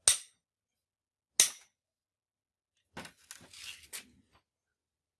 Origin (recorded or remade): recorded